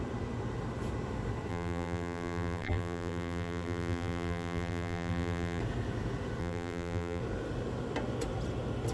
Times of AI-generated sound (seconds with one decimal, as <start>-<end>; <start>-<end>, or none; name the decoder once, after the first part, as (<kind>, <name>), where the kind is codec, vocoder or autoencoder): 1.5-5.6 (vocoder, BigVGAN v2); 6.4-7.2